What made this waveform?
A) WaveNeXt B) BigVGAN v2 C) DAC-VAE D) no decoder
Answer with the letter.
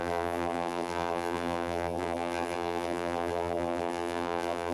B